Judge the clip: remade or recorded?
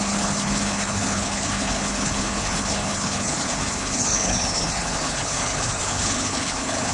remade